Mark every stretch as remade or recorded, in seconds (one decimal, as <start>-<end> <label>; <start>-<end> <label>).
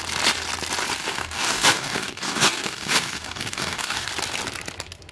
0.0-1.0 recorded; 1.0-4.1 remade; 4.1-5.1 recorded